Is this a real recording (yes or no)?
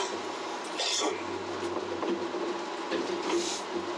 yes